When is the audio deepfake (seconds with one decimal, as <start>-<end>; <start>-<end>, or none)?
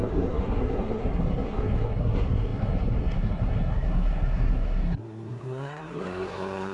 0.0-6.7